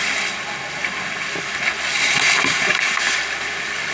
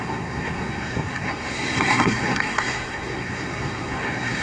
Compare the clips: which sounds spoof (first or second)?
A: second